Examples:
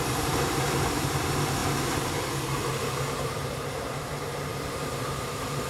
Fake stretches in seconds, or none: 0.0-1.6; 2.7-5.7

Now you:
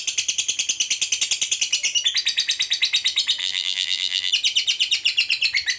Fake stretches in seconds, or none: 3.4-4.3

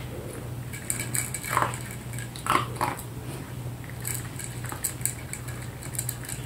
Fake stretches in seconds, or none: 1.5-3.1

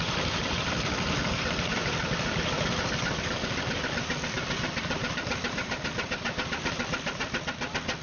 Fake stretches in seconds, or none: 0.0-1.8; 3.2-8.0

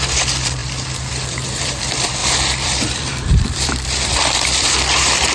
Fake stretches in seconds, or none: 0.0-5.3

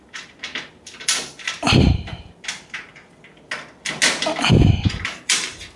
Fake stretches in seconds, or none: 0.0-2.9; 4.8-5.8